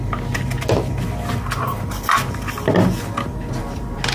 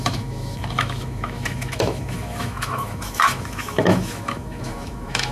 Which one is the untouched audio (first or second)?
first